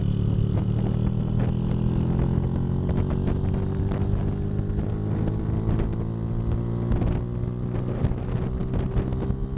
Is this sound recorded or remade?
recorded